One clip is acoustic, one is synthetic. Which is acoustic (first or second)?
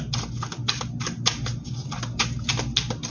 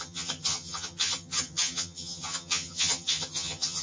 first